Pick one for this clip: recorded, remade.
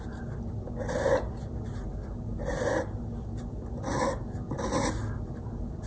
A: recorded